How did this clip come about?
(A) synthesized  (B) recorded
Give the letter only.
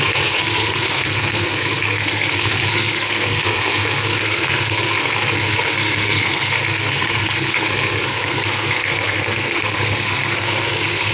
A